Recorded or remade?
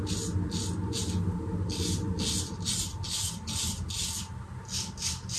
recorded